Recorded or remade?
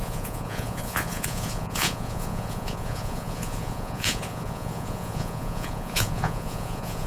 remade